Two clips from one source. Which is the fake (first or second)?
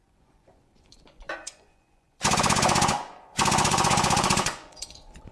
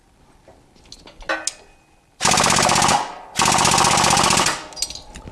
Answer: first